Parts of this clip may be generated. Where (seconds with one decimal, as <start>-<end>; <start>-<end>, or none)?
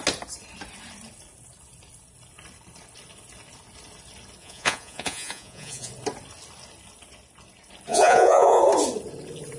4.4-5.9; 7.9-8.6